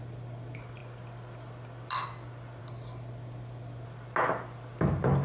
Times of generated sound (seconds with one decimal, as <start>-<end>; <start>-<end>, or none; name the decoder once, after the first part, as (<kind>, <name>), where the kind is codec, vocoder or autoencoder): none